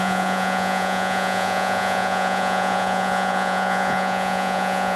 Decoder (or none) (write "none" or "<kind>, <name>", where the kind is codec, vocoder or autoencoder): vocoder, Vocos